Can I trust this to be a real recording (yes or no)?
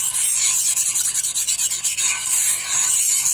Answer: yes